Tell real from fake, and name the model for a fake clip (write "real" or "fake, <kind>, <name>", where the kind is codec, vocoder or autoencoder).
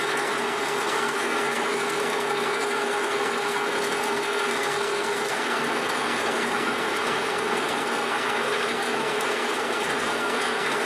fake, codec, SNAC